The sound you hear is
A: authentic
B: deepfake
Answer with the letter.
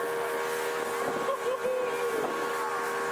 A